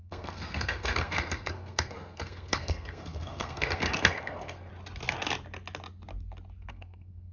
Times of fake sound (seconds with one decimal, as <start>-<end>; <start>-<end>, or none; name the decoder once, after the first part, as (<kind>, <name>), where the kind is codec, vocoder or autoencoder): 0.0-4.7 (codec, SNAC); 6.7-7.3